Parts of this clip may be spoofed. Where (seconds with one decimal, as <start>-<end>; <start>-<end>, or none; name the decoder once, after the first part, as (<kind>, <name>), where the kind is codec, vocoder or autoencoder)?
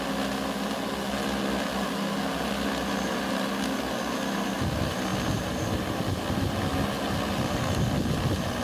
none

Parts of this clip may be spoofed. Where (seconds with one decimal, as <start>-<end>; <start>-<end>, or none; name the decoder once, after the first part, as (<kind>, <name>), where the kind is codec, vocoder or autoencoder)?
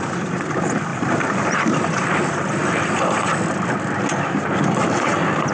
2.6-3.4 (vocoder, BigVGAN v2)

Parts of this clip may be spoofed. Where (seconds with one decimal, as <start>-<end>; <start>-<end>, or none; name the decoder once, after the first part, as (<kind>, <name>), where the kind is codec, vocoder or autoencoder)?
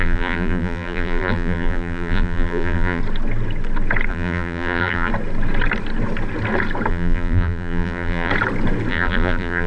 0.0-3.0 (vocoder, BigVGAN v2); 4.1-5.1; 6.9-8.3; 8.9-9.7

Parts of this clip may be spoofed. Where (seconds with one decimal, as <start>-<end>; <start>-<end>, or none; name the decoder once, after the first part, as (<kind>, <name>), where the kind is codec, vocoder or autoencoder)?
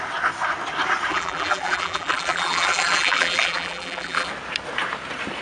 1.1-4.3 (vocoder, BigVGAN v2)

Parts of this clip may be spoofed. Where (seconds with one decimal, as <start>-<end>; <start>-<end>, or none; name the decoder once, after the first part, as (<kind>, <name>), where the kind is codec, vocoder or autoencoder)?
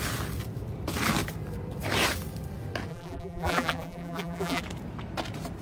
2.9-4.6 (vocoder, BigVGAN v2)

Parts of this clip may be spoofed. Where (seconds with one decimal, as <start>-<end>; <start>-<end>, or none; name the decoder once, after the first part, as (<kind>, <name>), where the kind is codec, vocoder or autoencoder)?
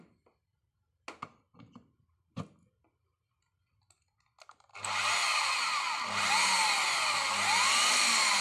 4.7-6.0 (vocoder, BigVGAN v2)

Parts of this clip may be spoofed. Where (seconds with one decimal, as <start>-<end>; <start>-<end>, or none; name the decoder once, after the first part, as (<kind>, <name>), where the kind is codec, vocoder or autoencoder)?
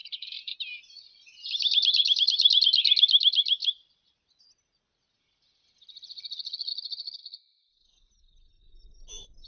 0.0-0.8 (vocoder, BigVGAN v2); 3.6-4.4